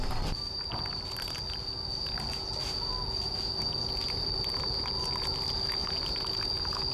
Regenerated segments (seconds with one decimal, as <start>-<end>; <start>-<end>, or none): none